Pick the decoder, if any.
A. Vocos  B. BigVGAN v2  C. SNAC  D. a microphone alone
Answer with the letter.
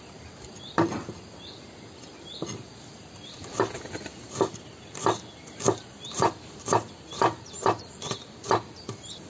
B